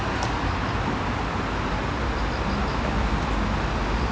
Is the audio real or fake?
real